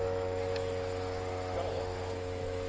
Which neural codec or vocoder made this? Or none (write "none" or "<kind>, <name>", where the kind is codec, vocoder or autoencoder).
autoencoder, DAC-VAE